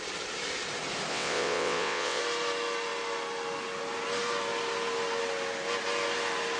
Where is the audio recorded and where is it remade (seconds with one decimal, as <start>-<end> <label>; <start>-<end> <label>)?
0.0-1.1 recorded; 1.1-2.2 remade; 2.2-6.6 recorded